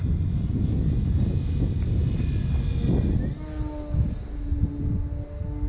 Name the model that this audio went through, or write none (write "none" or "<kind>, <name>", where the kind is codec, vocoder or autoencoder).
none